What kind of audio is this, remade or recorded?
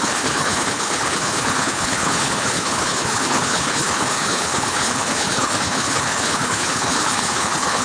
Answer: remade